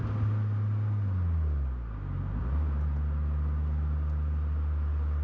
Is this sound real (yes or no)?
yes